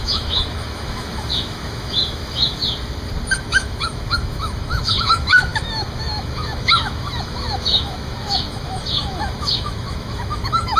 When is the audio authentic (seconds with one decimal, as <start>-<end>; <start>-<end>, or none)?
2.6-3.4